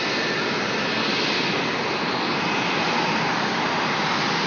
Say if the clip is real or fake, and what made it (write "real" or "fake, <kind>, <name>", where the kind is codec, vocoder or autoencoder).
real